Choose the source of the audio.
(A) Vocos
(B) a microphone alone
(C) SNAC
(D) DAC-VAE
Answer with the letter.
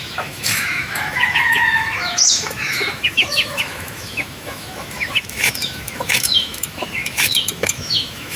D